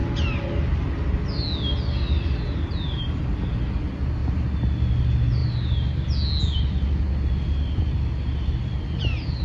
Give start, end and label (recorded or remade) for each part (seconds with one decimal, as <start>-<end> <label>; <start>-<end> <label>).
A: 0.0-9.4 recorded